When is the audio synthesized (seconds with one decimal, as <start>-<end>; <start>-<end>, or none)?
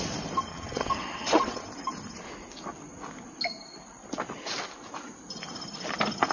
0.5-1.6